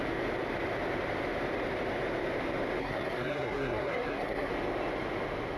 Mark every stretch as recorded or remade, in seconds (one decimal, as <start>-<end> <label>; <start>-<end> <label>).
0.0-2.8 recorded; 2.8-4.5 remade; 4.5-5.6 recorded